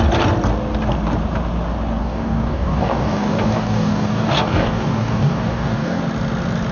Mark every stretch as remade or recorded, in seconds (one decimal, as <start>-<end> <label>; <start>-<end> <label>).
0.0-2.0 recorded; 2.0-6.0 remade; 6.0-6.7 recorded